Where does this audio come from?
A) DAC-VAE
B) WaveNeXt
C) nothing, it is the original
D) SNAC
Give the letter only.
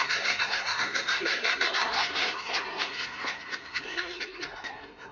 D